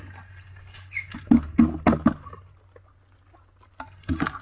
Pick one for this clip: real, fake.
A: real